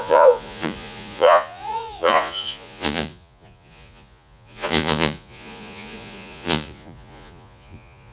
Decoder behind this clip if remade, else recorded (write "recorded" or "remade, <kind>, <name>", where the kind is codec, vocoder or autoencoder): remade, vocoder, Vocos